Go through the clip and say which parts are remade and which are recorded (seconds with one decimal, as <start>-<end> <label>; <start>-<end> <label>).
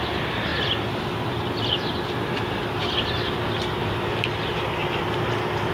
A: 0.0-5.7 recorded